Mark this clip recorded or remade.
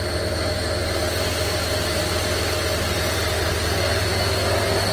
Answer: recorded